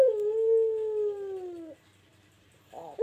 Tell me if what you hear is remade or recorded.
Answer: recorded